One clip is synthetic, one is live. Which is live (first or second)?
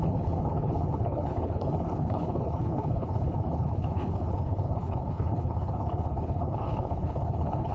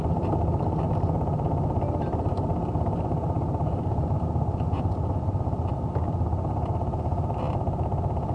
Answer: second